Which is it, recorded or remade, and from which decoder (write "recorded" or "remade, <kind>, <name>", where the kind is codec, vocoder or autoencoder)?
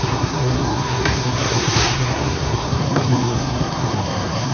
remade, codec, SNAC